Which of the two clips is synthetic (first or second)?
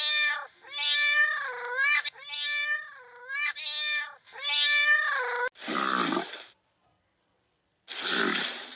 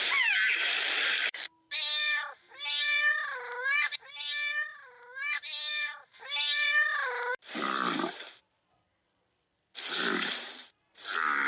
second